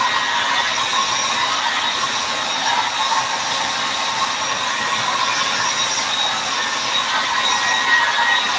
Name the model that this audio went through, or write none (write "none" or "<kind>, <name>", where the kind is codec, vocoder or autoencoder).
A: none